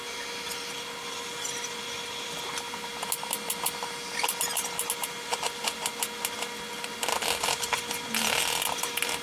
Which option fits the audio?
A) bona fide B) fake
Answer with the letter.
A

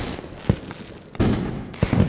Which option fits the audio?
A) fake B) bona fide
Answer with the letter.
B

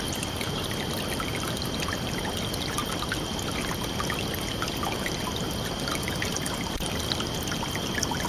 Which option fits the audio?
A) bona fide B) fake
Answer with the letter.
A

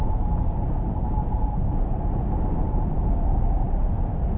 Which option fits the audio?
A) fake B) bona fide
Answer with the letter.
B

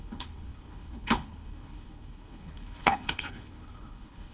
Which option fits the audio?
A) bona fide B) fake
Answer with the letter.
B